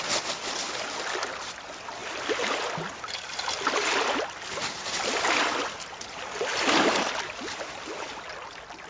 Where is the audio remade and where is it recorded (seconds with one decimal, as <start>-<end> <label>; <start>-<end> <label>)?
0.0-2.0 recorded; 2.0-5.4 remade; 5.4-8.9 recorded